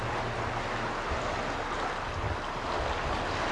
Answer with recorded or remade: recorded